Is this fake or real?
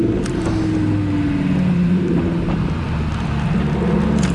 real